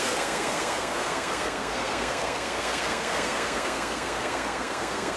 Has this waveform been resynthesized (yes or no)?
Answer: yes